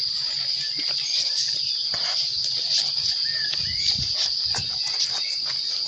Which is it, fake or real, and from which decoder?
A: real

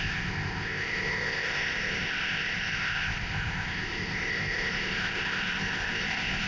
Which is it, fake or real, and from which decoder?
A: fake, codec, ZipCodec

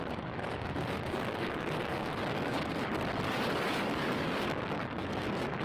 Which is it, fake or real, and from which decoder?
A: fake, codec, DAC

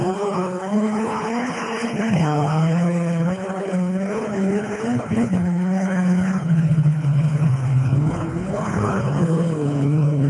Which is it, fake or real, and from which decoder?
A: fake, codec, HILCodec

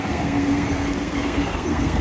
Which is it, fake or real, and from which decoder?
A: fake, codec, SNAC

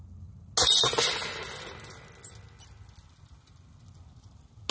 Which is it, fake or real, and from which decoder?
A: real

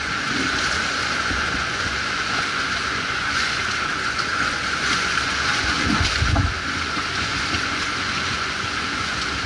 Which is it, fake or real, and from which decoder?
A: fake, vocoder, Vocos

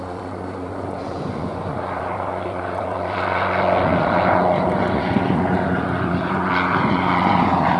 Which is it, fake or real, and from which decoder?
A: fake, vocoder, Vocos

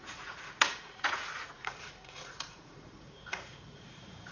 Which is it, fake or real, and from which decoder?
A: fake, vocoder, Vocos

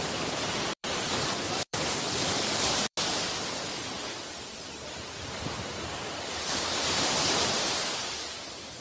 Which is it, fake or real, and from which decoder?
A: fake, vocoder, BigVGAN v2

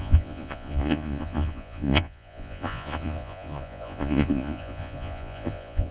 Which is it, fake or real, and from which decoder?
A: fake, vocoder, Vocos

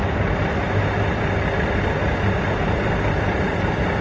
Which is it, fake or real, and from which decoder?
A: real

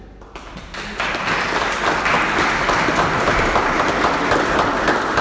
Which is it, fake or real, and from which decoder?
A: real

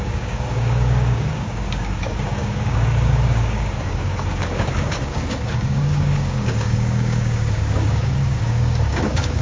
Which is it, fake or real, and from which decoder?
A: fake, codec, DAC